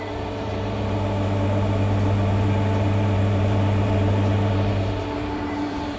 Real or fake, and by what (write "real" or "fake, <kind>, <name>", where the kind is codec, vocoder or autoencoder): fake, vocoder, BigVGAN v2